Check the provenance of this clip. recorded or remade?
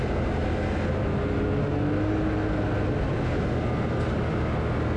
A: recorded